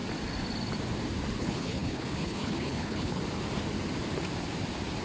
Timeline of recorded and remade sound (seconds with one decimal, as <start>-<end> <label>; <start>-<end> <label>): 0.0-1.4 recorded; 1.4-3.2 remade; 3.2-5.0 recorded